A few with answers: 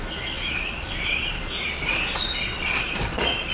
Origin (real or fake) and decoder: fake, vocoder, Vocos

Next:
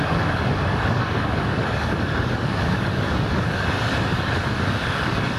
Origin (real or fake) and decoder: fake, codec, DAC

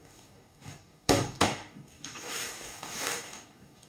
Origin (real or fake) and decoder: fake, codec, DAC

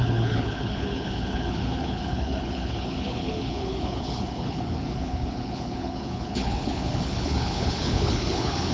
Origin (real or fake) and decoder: fake, codec, HILCodec